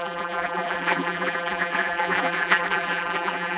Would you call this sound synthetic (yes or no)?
yes